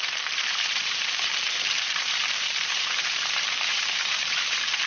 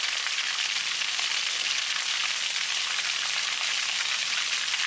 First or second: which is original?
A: second